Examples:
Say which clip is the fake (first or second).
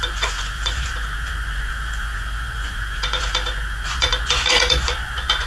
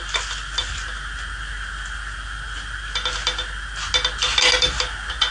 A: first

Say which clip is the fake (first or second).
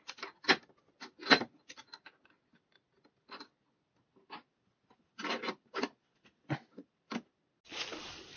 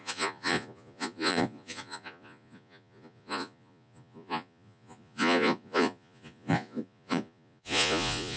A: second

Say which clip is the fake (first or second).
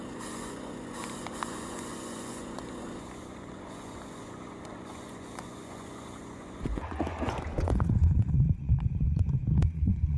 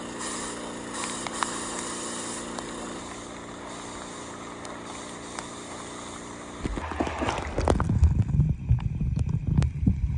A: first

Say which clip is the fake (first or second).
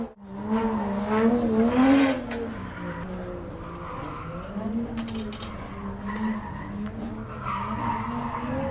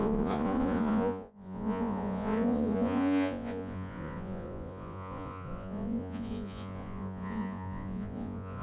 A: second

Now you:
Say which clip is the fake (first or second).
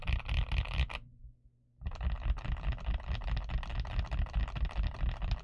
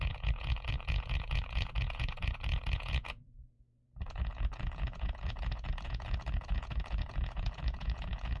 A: second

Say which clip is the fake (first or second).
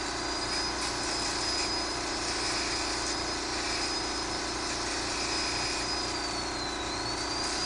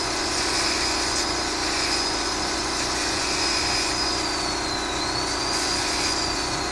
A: second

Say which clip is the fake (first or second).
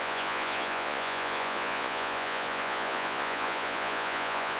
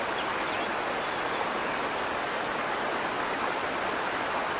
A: first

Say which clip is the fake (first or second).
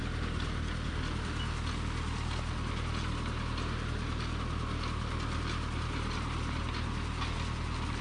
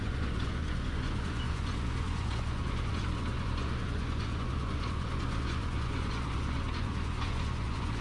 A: second